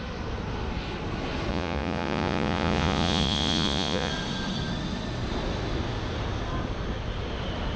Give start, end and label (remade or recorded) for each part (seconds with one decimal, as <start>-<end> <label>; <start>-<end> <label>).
0.0-1.5 recorded; 1.5-4.1 remade; 4.1-7.8 recorded